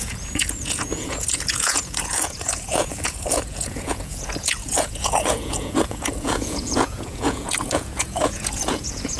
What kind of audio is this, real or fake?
fake